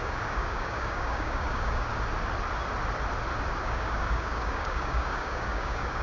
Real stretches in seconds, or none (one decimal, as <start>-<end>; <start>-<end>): 1.9-3.6